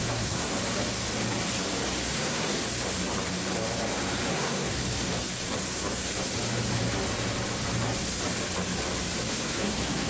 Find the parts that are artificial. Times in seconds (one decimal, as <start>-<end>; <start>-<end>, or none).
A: 0.0-0.5; 2.1-2.6; 4.3-4.8; 9.4-10.1